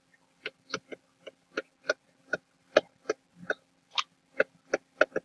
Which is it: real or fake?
real